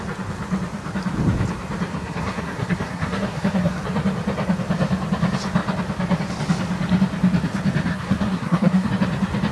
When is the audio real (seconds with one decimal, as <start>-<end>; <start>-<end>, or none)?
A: 0.0-1.9; 3.8-7.9; 8.9-9.5